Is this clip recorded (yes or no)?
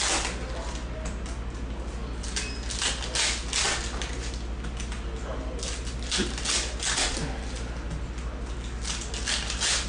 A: yes